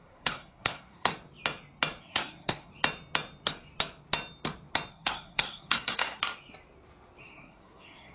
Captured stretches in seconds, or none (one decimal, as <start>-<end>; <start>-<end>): 1.1-2.0; 2.7-4.9; 6.2-7.2